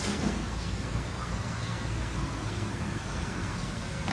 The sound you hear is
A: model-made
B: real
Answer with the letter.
A